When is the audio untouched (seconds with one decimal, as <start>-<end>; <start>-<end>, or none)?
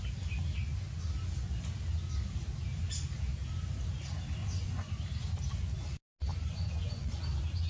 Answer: 0.0-4.4; 4.9-6.3; 7.2-7.7